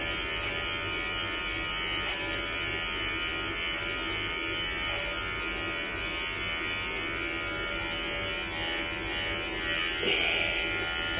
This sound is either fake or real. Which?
real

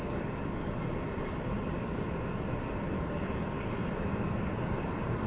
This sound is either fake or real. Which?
real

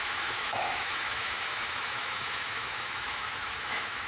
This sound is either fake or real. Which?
fake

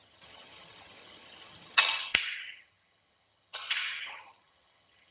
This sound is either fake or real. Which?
fake